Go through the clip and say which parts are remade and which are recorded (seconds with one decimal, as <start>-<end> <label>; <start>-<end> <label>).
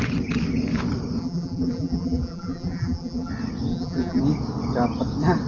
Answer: 0.0-1.2 recorded; 1.2-3.3 remade; 3.3-3.7 recorded; 3.7-4.2 remade; 4.2-5.5 recorded